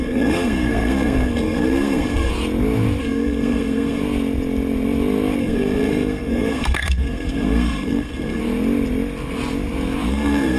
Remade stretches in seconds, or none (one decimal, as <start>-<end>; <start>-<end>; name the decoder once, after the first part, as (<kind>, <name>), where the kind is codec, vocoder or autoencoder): 0.0-2.3 (codec, SNAC); 3.0-4.0; 5.4-8.4; 10.1-10.6